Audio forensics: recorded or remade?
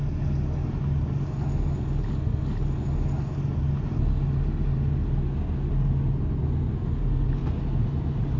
recorded